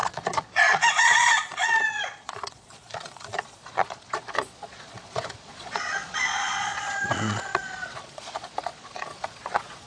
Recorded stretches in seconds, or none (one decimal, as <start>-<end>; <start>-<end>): none